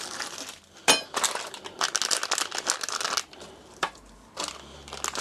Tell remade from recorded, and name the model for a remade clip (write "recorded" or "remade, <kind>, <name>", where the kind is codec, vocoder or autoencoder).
recorded